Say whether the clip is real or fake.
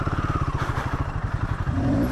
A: fake